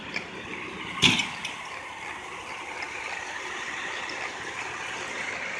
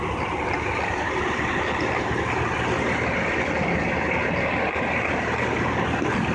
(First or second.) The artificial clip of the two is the first